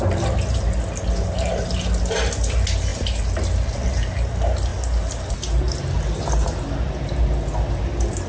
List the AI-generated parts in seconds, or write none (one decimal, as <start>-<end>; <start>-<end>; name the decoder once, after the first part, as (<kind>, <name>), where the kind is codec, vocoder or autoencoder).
none